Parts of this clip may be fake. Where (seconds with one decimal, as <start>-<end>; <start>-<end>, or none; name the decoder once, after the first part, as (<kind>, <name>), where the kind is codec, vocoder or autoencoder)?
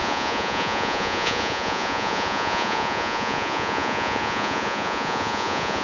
0.0-5.8 (vocoder, Vocos)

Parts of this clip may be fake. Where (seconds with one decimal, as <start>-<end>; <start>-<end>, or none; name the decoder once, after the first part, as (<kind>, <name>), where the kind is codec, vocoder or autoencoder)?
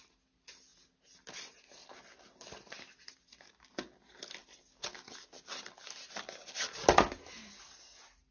none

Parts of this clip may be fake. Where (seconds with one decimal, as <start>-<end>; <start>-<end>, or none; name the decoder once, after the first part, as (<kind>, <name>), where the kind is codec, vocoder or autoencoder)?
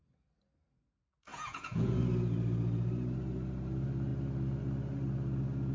1.3-2.0 (vocoder, Vocos)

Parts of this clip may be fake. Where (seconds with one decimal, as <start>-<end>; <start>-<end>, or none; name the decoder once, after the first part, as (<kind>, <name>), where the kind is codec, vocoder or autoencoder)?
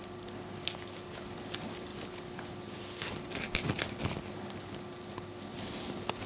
none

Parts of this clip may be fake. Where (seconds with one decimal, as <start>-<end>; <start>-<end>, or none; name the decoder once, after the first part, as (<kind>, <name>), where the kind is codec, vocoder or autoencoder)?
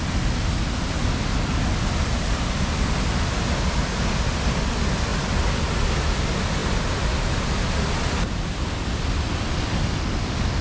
none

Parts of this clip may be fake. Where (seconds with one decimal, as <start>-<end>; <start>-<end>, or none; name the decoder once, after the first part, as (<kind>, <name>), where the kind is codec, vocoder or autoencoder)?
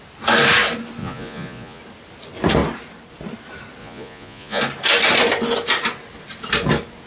1.0-1.8 (vocoder, Vocos); 3.8-4.6